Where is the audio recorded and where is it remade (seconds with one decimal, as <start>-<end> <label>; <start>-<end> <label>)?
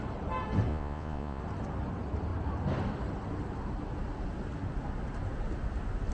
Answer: 0.0-0.7 recorded; 0.7-1.4 remade; 1.4-6.1 recorded